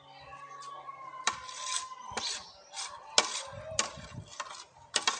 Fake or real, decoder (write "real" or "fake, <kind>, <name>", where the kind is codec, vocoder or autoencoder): real